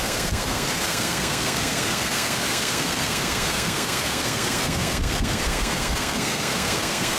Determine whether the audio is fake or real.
fake